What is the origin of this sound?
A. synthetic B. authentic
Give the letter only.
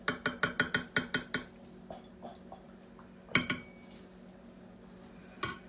B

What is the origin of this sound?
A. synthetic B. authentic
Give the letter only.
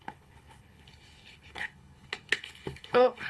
A